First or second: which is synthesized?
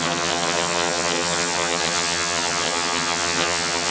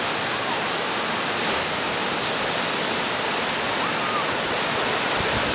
first